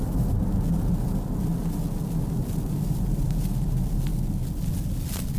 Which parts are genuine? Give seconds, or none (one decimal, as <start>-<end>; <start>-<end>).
0.0-5.4